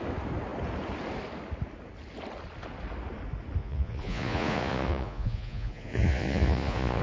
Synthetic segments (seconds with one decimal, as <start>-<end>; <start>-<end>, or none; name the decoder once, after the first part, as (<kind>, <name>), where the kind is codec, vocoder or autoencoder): 3.6-7.0 (vocoder, Vocos)